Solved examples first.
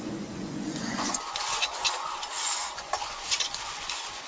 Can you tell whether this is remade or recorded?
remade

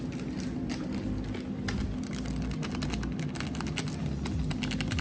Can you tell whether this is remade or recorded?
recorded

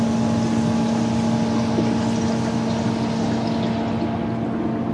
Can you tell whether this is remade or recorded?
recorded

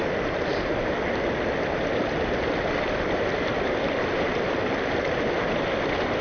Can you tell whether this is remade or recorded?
recorded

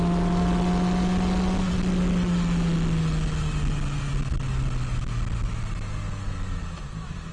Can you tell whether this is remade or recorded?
recorded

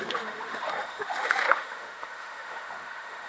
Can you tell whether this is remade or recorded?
remade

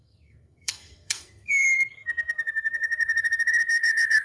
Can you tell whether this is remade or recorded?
remade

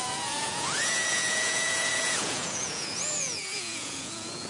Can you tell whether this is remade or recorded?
remade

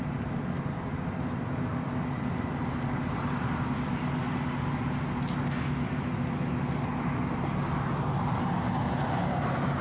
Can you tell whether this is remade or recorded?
recorded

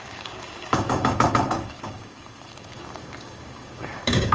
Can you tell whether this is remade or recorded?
remade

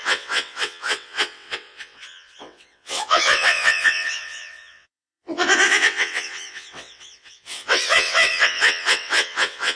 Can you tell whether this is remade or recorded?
remade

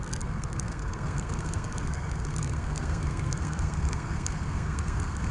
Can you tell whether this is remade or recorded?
remade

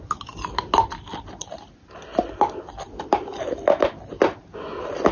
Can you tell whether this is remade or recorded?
recorded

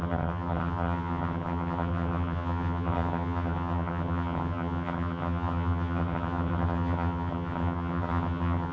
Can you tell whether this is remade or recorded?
remade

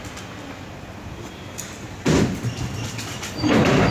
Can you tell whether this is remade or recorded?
recorded